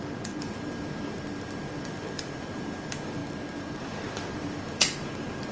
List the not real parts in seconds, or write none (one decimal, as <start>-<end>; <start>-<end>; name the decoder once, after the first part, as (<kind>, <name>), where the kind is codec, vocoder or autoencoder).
0.0-3.2 (vocoder, BigVGAN v2); 3.8-5.5